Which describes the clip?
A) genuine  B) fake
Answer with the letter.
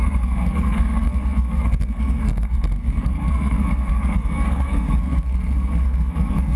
B